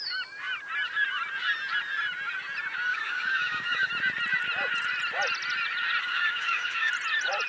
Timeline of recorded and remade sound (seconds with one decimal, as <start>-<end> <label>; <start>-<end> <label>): 0.0-2.9 recorded; 2.9-3.9 remade; 3.9-6.0 recorded; 6.0-6.9 remade; 6.9-7.5 recorded